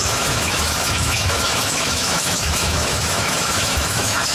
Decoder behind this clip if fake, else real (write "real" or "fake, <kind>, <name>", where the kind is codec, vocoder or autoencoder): fake, autoencoder, DAC-VAE